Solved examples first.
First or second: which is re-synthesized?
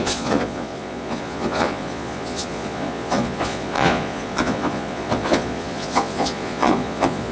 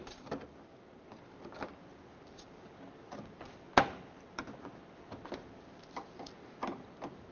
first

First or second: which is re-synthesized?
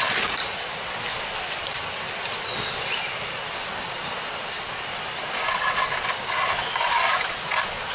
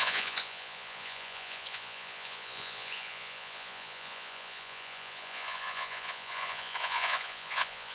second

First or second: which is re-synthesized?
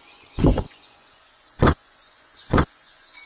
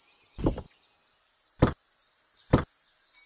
first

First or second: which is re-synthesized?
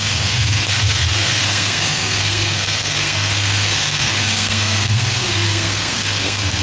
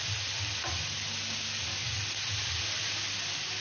first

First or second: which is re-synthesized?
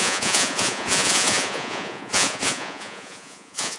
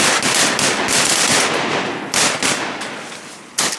first